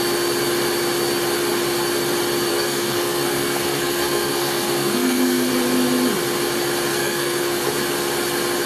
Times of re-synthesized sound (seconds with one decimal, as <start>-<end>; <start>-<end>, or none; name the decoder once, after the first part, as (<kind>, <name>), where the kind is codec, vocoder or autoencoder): 2.5-5.5 (codec, SNAC); 6.9-7.8